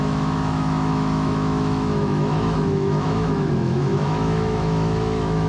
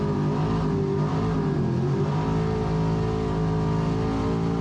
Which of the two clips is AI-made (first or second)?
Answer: first